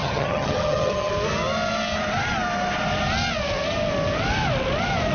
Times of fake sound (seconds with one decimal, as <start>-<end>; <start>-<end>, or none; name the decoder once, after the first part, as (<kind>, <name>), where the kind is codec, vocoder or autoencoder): 0.0-1.1 (vocoder, HiFi-GAN)